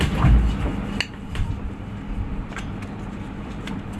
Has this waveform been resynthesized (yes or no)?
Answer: no